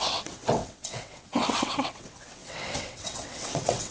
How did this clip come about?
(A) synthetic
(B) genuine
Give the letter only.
A